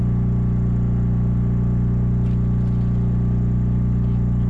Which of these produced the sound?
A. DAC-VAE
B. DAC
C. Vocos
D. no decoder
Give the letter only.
D